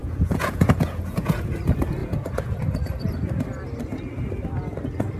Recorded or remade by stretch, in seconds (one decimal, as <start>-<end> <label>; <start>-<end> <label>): 0.0-1.5 remade; 1.5-2.0 recorded; 2.0-2.6 remade; 2.6-5.2 recorded